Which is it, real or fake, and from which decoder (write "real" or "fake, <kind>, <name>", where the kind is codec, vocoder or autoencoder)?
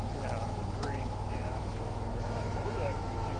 fake, autoencoder, DAC-VAE